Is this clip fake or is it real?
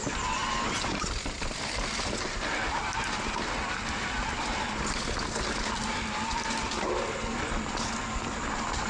real